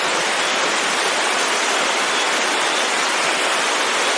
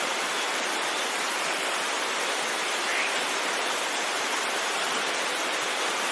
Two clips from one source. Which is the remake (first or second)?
second